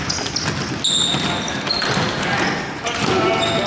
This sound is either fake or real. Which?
real